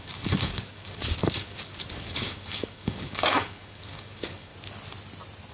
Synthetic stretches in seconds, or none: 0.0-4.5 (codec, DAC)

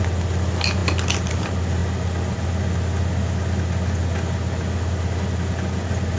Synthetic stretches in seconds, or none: none

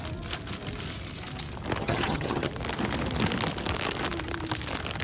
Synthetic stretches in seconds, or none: 1.8-2.5 (vocoder, HiFi-GAN)

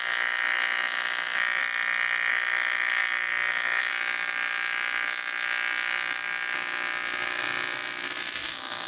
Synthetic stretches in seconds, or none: 0.0-1.6 (autoencoder, DAC-VAE); 2.3-8.9

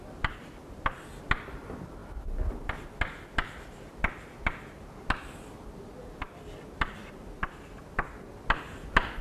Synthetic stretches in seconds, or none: none

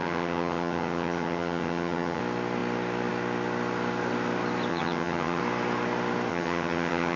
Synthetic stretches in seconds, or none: 0.0-2.2 (vocoder, HiFi-GAN); 4.7-5.4; 6.3-7.2